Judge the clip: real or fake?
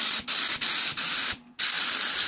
real